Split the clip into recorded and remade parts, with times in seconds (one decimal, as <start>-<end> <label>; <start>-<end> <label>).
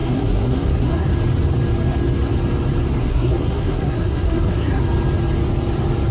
0.0-1.1 remade; 1.1-3.0 recorded; 3.0-4.8 remade; 4.8-6.1 recorded